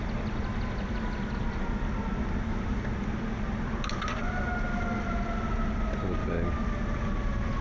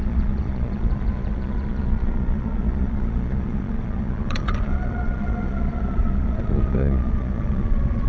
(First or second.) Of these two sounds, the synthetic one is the second